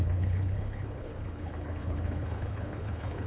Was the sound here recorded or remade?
remade